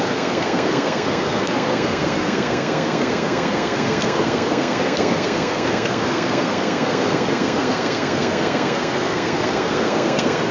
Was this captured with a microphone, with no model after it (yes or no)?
no